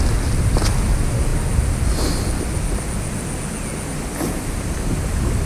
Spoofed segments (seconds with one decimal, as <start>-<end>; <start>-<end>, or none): none